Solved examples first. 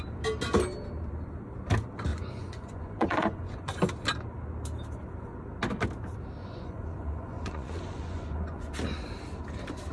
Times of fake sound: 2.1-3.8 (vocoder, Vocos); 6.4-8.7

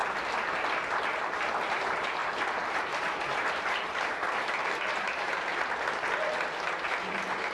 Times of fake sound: 1.0-5.5 (vocoder, BigVGAN v2); 7.1-7.5

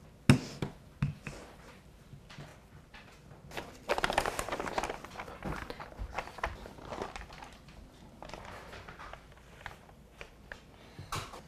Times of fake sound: none

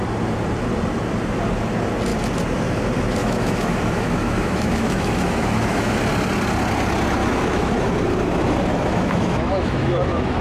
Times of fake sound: 3.2-6.0 (autoencoder, DAC-VAE); 7.2-7.7; 8.7-10.4

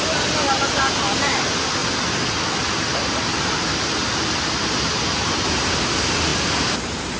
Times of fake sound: none

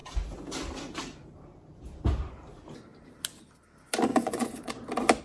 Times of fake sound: 4.1-4.7 (vocoder, Vocos)

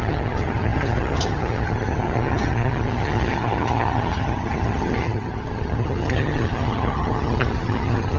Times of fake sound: 0.0-8.2 (vocoder, HiFi-GAN)